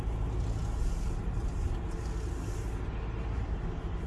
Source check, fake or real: real